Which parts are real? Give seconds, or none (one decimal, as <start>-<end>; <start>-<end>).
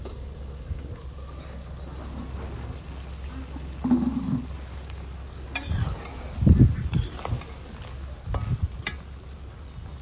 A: 0.9-10.0